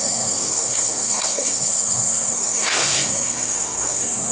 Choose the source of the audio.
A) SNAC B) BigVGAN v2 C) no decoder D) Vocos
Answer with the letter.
A